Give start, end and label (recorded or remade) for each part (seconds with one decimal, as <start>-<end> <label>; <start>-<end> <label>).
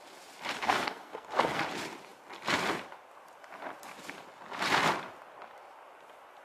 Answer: 0.0-0.6 recorded; 0.6-1.6 remade; 1.6-6.4 recorded